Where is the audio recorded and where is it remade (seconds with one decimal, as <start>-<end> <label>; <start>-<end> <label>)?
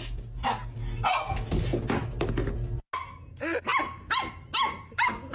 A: 0.0-5.3 recorded